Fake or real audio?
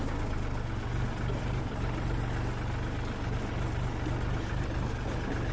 real